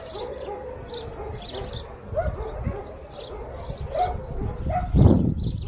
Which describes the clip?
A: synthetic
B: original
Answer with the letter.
B